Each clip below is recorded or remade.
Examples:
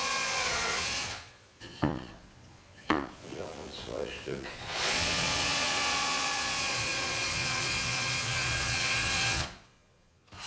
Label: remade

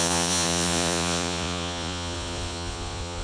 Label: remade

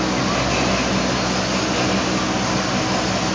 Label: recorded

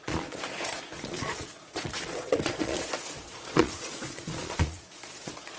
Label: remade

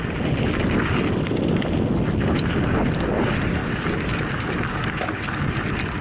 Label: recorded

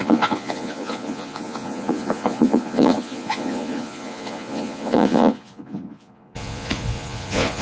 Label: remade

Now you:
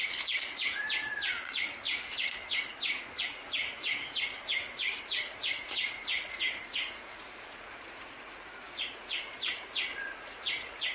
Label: remade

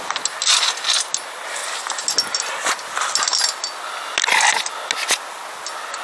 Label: recorded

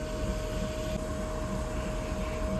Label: recorded